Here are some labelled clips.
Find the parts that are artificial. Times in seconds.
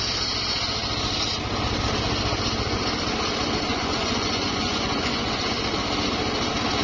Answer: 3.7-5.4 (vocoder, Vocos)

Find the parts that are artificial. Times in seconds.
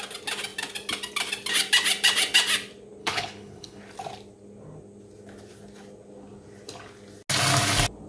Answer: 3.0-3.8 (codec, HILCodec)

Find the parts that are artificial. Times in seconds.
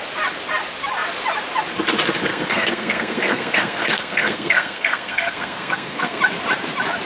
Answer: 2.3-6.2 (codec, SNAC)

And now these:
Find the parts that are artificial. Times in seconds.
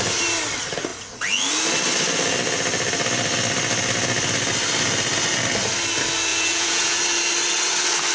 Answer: 6.3-7.0 (vocoder, Vocos)